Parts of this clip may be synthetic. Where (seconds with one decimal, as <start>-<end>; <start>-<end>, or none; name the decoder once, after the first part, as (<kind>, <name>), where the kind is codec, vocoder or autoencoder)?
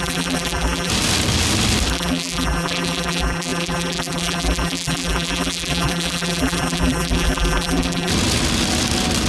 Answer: 0.0-0.9 (vocoder, BigVGAN v2); 1.9-8.1